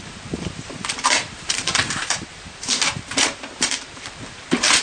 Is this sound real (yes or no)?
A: no